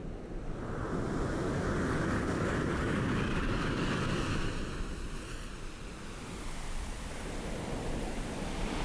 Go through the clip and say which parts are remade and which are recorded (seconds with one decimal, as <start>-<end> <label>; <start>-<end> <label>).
0.0-1.4 recorded; 1.4-4.5 remade; 4.5-8.8 recorded